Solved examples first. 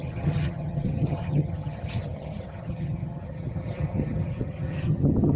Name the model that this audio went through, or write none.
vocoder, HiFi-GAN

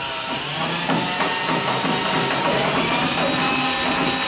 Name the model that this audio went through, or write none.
none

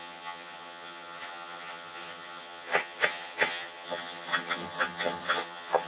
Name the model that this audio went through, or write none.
vocoder, HiFi-GAN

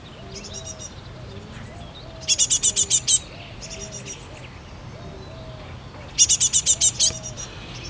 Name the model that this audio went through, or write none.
none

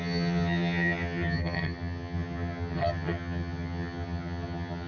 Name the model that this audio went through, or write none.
vocoder, HiFi-GAN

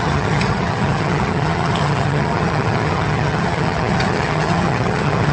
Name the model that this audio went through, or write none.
vocoder, HiFi-GAN